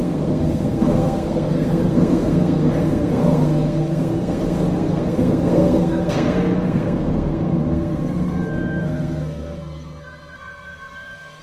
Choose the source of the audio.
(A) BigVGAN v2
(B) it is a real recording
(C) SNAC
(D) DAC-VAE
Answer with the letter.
C